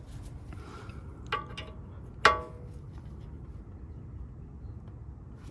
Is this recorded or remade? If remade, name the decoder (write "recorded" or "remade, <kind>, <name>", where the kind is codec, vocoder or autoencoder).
recorded